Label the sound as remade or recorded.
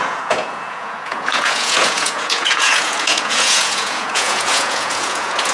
remade